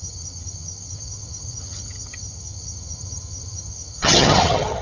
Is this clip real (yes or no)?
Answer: no